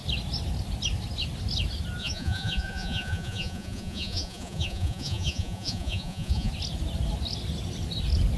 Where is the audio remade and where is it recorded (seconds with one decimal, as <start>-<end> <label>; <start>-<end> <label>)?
0.0-2.0 recorded; 2.0-6.5 remade; 6.5-8.4 recorded